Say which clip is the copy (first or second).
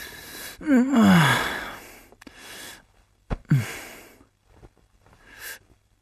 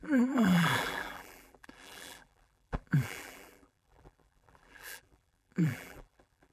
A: second